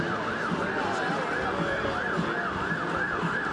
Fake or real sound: real